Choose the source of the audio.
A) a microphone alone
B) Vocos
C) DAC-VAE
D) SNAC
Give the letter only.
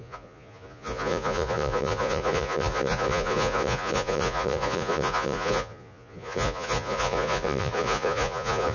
B